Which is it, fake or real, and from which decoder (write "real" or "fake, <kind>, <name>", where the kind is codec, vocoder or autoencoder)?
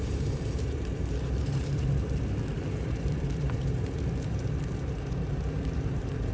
fake, vocoder, BigVGAN v2